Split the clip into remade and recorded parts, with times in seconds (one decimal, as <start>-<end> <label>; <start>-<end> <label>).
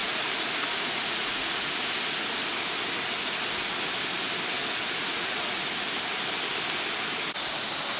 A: 0.0-1.7 remade; 1.7-4.6 recorded; 4.6-5.6 remade; 5.6-8.0 recorded